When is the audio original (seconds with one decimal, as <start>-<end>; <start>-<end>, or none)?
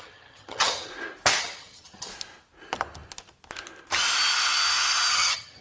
0.9-1.4; 2.1-5.1